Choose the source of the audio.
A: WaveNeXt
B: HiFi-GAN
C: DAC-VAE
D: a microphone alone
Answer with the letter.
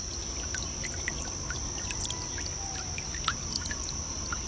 D